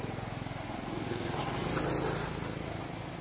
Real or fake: real